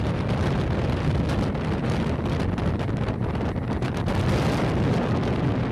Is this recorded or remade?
recorded